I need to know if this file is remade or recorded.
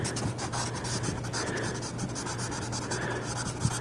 recorded